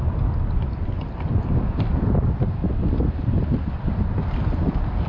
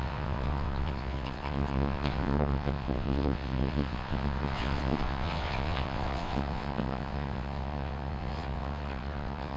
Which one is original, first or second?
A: first